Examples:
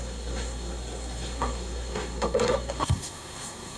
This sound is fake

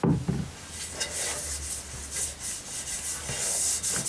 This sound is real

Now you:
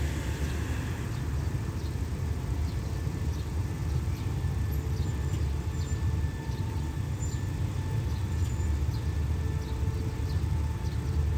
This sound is real